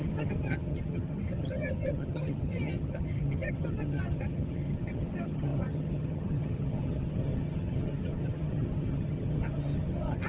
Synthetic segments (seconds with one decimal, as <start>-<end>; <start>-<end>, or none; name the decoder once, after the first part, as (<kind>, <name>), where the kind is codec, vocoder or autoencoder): 0.0-10.3 (vocoder, HiFi-GAN)